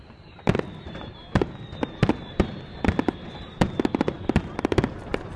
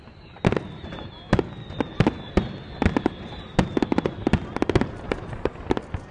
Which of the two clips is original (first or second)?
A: second